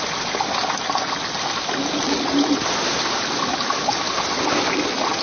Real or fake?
real